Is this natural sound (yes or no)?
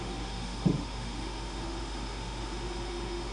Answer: no